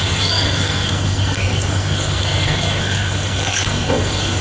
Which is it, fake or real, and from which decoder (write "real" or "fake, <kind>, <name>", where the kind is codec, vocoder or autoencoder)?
fake, codec, SNAC